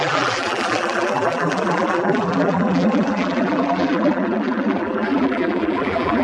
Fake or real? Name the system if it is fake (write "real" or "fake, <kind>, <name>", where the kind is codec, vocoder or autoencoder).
fake, vocoder, BigVGAN v2